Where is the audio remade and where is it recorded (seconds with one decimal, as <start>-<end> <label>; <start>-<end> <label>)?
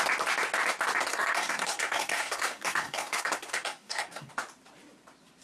0.0-1.1 recorded; 1.1-4.3 remade; 4.3-5.4 recorded